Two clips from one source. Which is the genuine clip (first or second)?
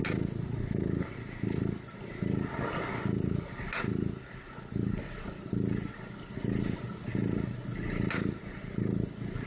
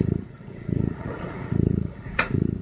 first